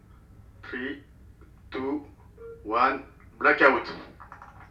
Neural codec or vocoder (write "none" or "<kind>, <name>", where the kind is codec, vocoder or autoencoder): none